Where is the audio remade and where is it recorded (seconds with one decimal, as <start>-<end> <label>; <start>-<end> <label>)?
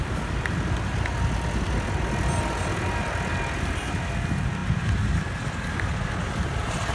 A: 0.0-6.9 recorded